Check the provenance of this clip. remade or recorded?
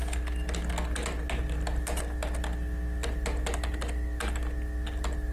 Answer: recorded